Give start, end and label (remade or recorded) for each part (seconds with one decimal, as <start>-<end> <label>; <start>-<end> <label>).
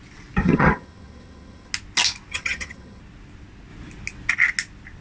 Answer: 0.0-0.4 recorded; 0.4-1.7 remade; 1.7-2.3 recorded; 2.3-3.0 remade; 3.0-5.0 recorded